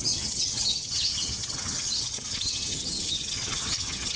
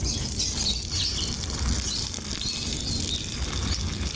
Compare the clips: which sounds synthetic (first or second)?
first